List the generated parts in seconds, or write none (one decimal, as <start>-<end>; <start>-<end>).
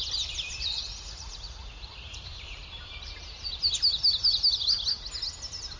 0.6-2.2